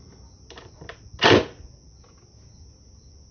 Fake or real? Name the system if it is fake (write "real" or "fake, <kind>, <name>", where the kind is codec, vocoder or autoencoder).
real